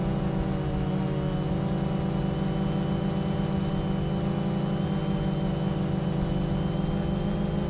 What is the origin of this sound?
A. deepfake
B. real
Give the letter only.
B